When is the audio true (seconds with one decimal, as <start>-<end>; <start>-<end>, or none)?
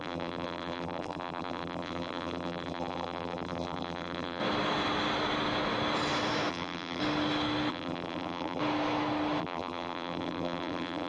4.4-6.5; 7.0-7.7; 8.6-9.4